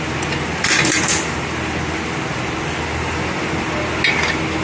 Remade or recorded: recorded